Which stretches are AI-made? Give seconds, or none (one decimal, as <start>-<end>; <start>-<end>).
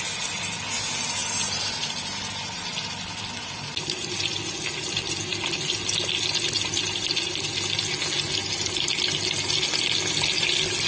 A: none